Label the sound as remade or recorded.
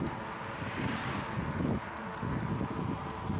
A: recorded